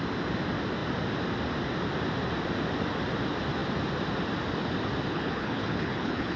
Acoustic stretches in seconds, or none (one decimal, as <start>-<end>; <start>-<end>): 0.0-5.1